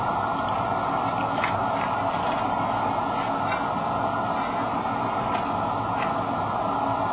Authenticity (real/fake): real